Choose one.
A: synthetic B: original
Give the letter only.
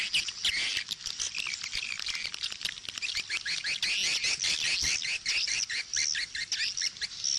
B